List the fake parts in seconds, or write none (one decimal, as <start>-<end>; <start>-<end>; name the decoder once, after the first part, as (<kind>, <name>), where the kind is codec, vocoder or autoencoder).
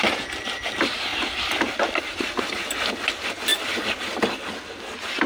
1.1-2.5 (vocoder, BigVGAN v2); 3.5-4.5